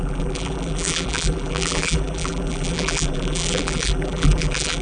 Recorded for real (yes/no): no